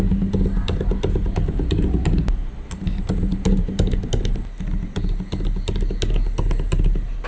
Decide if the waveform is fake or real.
real